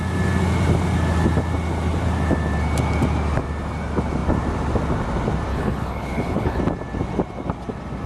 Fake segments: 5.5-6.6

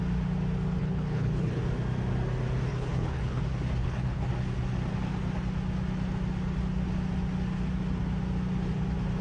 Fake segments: 0.8-1.6; 2.7-3.4; 3.8-4.3

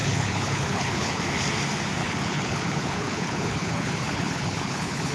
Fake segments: 0.0-1.2; 2.0-5.1

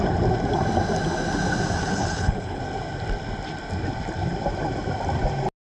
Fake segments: 1.8-2.6

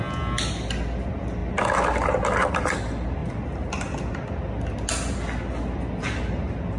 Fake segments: none

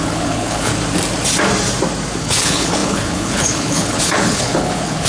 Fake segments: 0.0-0.7; 2.2-5.1